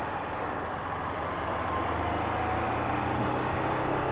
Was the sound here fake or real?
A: real